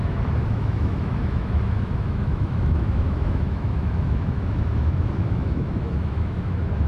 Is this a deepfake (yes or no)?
yes